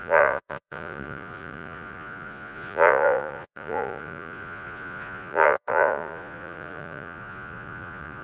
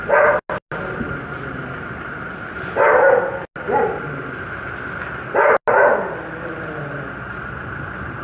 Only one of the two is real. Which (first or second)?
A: second